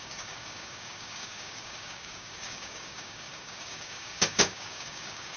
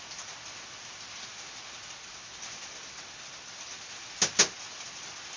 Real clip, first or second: second